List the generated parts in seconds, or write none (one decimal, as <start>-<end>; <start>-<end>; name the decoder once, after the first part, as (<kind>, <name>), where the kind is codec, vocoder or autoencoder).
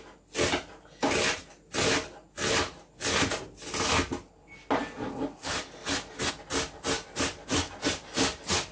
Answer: none